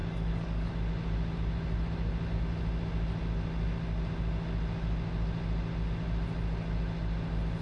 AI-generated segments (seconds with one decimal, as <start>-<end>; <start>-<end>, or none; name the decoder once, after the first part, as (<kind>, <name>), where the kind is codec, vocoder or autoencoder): 0.0-0.7 (codec, DAC)